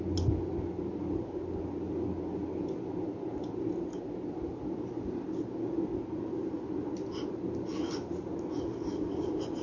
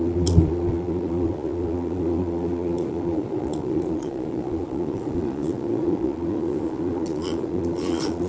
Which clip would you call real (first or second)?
first